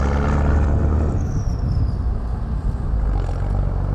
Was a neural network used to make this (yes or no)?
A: no